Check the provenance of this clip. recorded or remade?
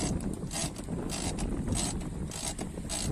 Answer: recorded